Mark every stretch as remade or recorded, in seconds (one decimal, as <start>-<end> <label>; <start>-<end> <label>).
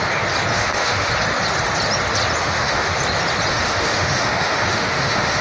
0.0-0.5 recorded; 0.5-1.1 remade; 1.1-2.4 recorded; 2.4-3.0 remade; 3.0-3.5 recorded; 3.5-5.4 remade